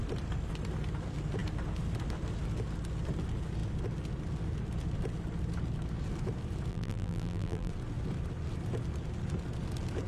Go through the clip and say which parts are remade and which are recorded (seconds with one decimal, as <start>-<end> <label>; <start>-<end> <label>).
0.0-6.7 recorded; 6.7-7.7 remade; 7.7-10.1 recorded